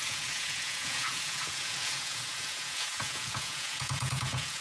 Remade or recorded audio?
remade